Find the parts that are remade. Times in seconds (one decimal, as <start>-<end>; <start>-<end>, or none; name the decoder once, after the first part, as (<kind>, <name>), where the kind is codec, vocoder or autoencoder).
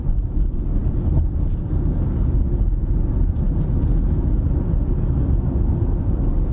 none